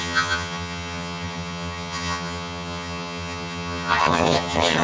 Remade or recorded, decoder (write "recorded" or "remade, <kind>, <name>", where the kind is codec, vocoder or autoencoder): remade, vocoder, HiFi-GAN